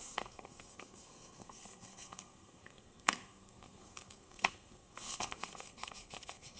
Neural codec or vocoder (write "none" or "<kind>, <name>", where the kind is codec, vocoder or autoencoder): codec, SNAC